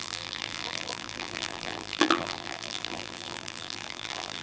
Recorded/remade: remade